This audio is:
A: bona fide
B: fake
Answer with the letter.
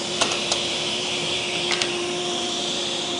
B